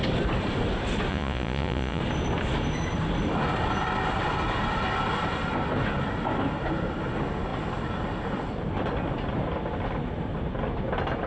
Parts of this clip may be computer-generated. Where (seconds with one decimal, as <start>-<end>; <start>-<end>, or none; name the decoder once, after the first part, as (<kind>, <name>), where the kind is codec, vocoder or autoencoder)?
1.1-2.0 (vocoder, Vocos)